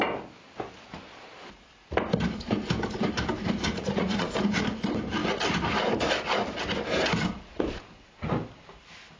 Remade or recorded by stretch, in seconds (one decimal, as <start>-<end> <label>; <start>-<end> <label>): 0.0-3.7 recorded; 3.7-4.3 remade; 4.3-9.2 recorded